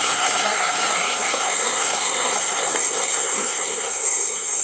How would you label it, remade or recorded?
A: remade